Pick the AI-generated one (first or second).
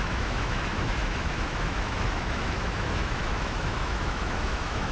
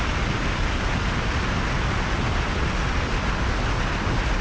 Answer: first